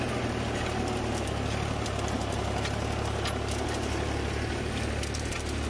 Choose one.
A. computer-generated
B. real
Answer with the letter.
B